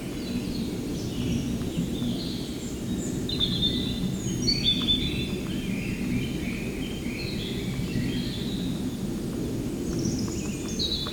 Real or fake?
real